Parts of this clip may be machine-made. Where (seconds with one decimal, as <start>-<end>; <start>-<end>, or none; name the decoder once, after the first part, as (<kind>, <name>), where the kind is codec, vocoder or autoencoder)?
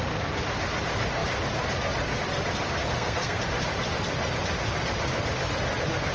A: 2.8-3.4 (codec, SNAC)